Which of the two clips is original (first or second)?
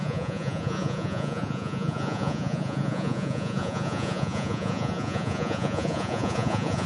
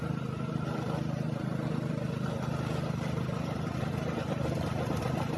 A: second